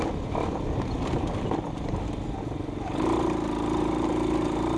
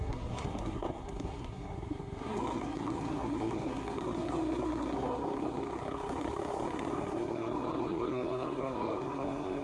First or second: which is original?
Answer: first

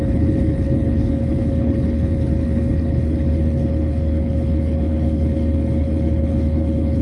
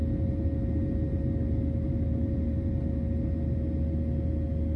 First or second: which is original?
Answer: second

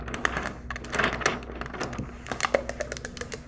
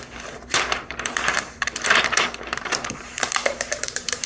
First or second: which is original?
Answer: first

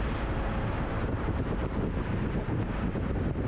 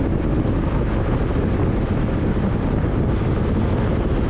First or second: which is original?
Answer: second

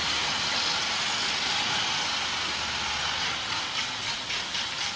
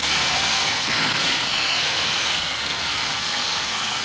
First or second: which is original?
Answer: first